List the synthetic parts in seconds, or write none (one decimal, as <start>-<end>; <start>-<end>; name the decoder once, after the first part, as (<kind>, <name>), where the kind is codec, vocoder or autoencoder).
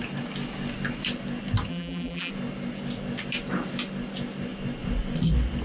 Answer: 1.7-2.3 (vocoder, BigVGAN v2)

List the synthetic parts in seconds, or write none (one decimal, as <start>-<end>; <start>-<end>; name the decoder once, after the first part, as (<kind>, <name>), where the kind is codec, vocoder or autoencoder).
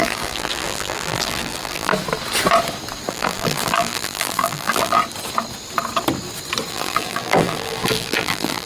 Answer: 0.0-1.9 (vocoder, BigVGAN v2); 3.1-5.0; 6.7-8.7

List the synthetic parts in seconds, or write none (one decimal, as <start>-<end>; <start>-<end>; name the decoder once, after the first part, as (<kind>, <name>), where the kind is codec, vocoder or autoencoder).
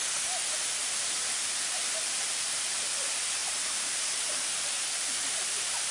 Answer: 0.8-1.8 (vocoder, BigVGAN v2); 3.4-4.3